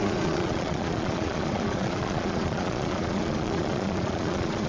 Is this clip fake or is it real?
fake